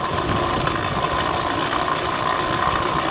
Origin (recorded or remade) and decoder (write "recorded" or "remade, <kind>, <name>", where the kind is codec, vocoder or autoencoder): recorded